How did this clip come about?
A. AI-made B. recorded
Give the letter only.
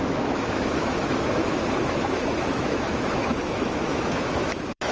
A